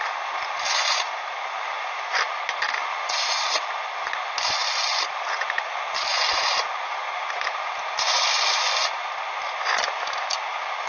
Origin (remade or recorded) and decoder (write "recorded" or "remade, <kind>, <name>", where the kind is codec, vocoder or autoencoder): recorded